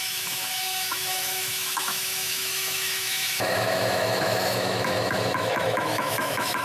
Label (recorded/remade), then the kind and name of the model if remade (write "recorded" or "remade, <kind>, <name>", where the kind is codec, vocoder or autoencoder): remade, autoencoder, DAC-VAE